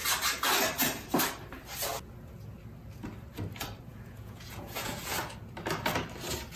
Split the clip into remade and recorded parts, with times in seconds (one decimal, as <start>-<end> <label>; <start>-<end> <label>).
0.0-3.9 recorded; 3.9-5.0 remade; 5.0-6.6 recorded